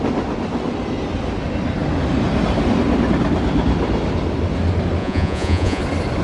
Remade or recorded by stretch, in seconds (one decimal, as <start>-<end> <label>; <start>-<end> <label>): 0.0-5.0 recorded; 5.0-5.8 remade; 5.8-6.2 recorded